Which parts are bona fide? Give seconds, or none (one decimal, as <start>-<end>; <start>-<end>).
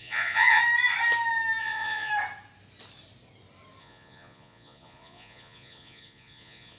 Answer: 0.6-1.6; 2.1-3.8